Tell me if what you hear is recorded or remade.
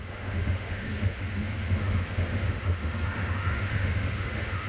remade